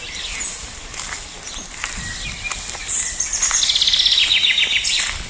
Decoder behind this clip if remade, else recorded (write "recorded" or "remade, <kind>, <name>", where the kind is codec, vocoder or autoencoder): recorded